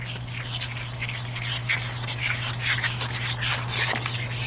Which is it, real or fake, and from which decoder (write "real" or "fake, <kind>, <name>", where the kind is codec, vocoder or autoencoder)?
real